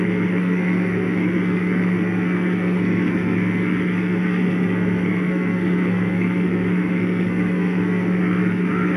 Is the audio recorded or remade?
remade